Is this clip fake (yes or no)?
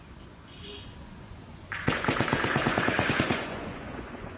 yes